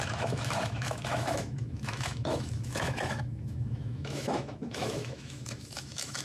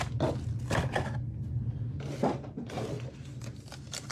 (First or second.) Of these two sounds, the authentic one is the second